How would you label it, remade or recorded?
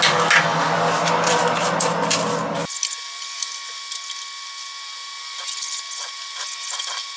recorded